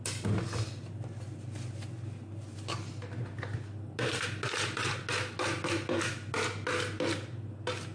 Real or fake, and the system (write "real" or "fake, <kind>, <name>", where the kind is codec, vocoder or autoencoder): real